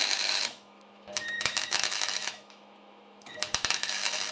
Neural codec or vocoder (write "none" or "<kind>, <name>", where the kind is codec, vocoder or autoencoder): autoencoder, DAC-VAE